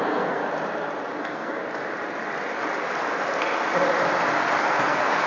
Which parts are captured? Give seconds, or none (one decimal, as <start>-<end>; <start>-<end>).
0.4-1.2; 1.6-4.6